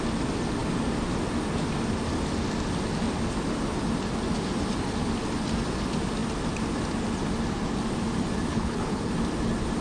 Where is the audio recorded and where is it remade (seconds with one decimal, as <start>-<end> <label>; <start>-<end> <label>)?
0.0-8.5 recorded; 8.5-9.1 remade; 9.1-9.8 recorded